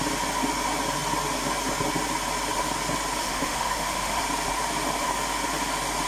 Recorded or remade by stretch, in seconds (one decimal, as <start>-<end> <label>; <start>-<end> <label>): 0.0-3.2 recorded; 3.2-4.2 remade; 4.2-6.1 recorded